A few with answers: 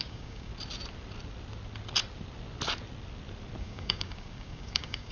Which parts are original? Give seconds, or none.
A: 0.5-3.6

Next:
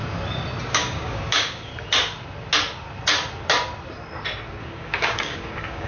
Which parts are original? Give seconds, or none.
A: 0.0-0.7; 1.7-4.6

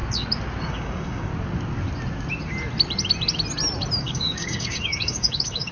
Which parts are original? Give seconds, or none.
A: 0.0-0.6; 1.3-4.0

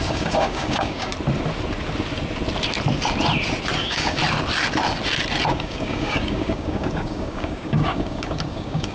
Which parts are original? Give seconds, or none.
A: 1.1-3.8; 4.2-5.5